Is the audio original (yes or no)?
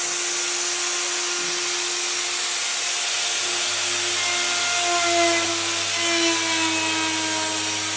yes